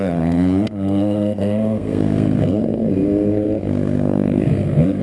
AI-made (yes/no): yes